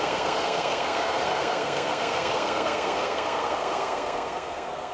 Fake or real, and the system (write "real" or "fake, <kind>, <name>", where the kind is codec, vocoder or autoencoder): fake, codec, SNAC